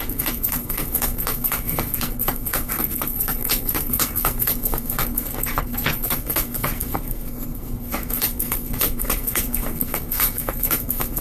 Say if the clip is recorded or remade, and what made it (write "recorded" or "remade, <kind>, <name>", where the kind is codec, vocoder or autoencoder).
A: remade, codec, SNAC